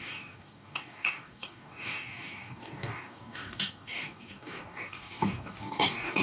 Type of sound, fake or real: fake